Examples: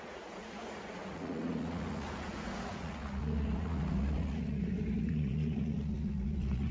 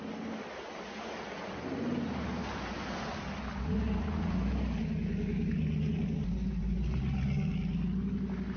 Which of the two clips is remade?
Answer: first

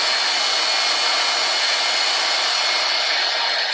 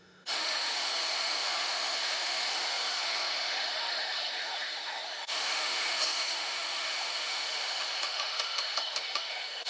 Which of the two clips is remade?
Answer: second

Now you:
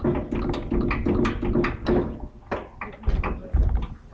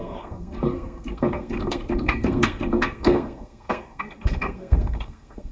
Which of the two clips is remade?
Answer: second